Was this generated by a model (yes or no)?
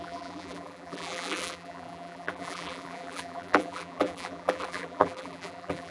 yes